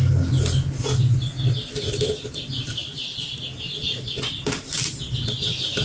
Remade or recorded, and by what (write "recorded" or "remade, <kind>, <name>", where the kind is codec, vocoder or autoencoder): recorded